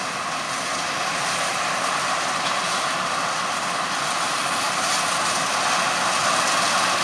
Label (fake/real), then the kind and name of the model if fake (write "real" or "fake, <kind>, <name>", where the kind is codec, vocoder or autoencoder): real